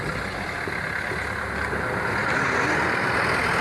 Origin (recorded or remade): recorded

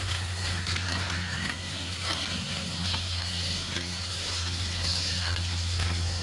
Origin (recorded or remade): remade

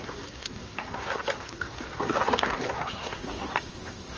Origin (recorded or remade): remade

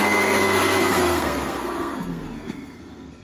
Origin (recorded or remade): remade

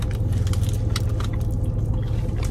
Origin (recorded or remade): recorded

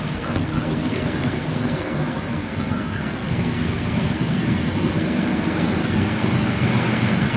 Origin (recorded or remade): remade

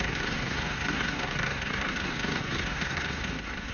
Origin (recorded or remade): remade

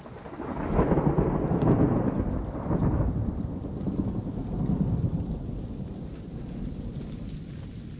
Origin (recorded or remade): recorded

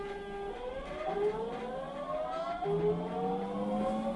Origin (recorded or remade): recorded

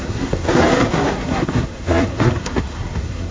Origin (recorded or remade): remade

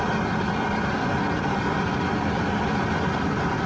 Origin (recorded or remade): recorded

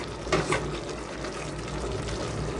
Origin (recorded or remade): recorded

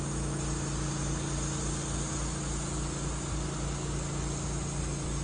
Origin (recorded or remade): recorded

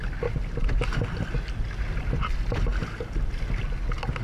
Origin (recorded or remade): recorded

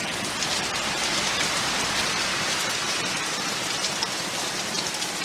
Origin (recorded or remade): recorded